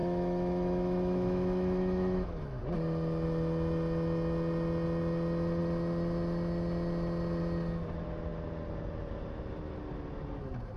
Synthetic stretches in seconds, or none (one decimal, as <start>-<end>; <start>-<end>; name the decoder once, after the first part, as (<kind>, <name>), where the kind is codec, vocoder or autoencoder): 0.0-2.6 (autoencoder, DAC-VAE)